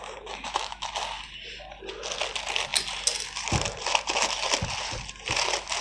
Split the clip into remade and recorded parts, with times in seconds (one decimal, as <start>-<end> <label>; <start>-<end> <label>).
0.0-0.9 remade; 0.9-5.8 recorded